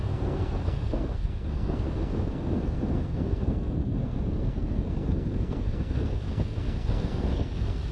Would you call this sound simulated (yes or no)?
yes